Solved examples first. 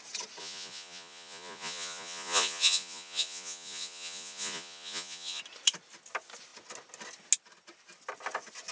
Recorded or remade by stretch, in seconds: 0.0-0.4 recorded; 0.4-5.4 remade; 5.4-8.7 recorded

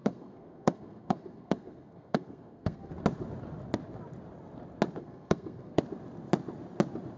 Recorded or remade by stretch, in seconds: 0.0-2.9 remade; 2.9-5.0 recorded; 5.0-5.8 remade; 5.8-7.2 recorded

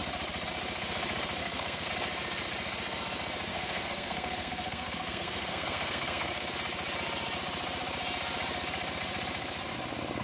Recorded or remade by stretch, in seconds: 0.0-1.4 recorded; 1.4-1.9 remade; 1.9-3.5 recorded; 3.5-6.5 remade; 6.5-10.2 recorded

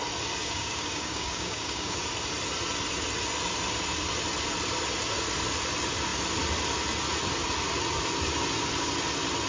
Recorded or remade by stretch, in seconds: 0.0-0.4 recorded; 0.4-2.0 remade; 2.0-9.5 recorded

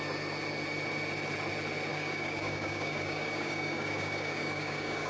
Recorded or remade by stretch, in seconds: 0.0-1.9 recorded; 1.9-5.1 remade

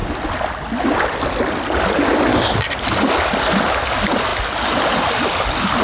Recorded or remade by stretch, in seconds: 0.0-5.8 recorded

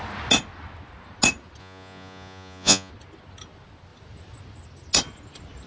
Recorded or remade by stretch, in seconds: 0.0-1.6 recorded; 1.6-2.9 remade; 2.9-5.7 recorded